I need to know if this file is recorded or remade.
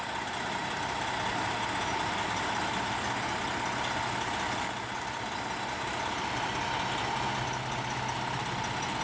recorded